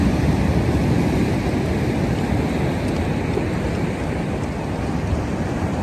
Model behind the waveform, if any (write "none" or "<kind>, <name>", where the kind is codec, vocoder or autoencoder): none